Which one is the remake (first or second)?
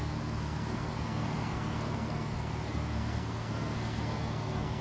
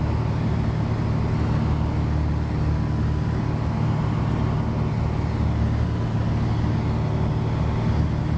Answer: first